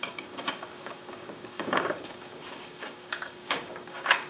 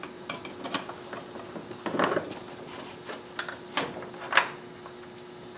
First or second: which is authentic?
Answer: second